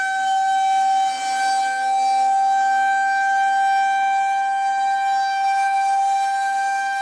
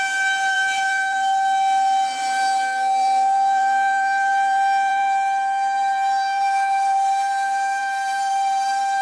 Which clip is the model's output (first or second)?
second